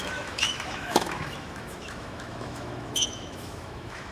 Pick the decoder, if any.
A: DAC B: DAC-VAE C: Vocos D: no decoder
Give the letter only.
B